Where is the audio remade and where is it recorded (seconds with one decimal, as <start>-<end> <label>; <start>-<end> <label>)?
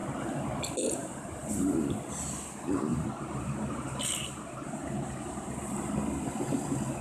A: 0.0-1.0 recorded; 1.0-1.5 remade; 1.5-2.9 recorded; 2.9-5.9 remade; 5.9-7.0 recorded